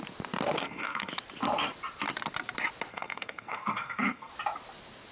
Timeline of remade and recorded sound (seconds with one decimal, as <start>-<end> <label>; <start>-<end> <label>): 0.0-0.6 recorded; 0.6-1.1 remade; 1.1-2.9 recorded; 2.9-4.3 remade; 4.3-5.1 recorded